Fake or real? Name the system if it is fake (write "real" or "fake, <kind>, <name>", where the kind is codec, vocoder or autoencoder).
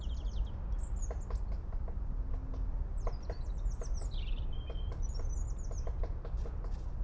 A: real